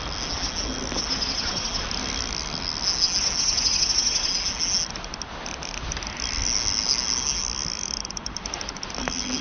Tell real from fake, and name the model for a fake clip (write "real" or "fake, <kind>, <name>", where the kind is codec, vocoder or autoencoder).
real